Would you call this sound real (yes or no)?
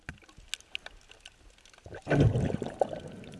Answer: yes